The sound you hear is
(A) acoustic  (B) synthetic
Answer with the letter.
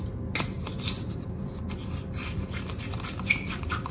A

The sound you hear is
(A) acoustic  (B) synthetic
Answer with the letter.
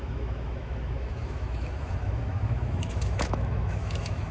B